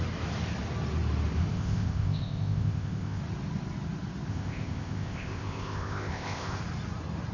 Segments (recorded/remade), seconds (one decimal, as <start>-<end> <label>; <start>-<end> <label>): 0.0-1.5 recorded; 1.5-3.2 remade; 3.2-4.3 recorded; 4.3-6.6 remade; 6.6-7.3 recorded